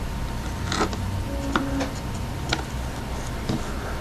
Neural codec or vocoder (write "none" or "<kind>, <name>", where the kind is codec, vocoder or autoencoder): none